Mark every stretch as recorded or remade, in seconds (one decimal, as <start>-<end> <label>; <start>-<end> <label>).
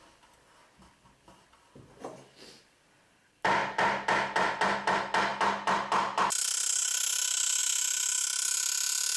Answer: 0.0-9.2 recorded